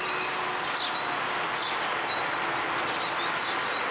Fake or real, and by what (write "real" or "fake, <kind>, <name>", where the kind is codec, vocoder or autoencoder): real